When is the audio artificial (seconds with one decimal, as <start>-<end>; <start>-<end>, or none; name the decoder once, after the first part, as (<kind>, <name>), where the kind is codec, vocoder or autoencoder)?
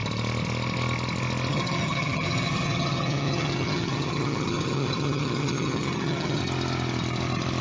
1.5-6.4 (vocoder, HiFi-GAN)